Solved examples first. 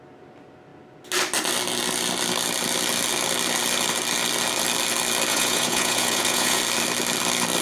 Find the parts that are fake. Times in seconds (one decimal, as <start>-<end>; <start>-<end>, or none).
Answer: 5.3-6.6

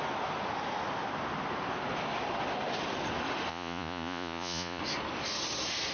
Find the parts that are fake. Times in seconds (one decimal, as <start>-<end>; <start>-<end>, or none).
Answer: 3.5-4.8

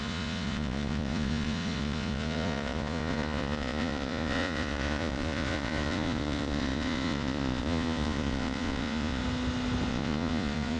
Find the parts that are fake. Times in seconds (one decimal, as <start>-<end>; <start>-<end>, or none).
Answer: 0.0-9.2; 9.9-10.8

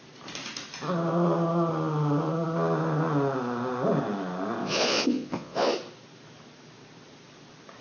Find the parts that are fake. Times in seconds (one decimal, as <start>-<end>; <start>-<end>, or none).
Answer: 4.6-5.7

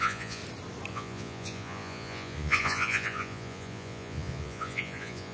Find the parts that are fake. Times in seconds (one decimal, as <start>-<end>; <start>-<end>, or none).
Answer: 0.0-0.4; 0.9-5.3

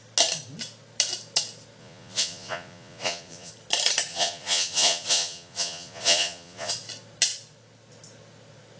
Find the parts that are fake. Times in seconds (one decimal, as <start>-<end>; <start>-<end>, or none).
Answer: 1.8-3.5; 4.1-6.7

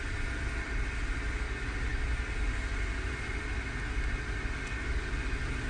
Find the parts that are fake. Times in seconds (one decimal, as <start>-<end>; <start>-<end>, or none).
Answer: none